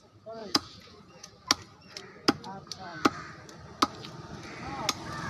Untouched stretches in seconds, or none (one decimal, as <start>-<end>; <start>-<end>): 0.0-0.4; 1.3-5.3